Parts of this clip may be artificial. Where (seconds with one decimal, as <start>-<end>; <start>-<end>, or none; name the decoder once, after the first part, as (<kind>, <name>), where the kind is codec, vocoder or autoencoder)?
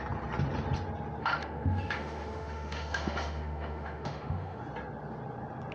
1.2-4.6 (autoencoder, DAC-VAE)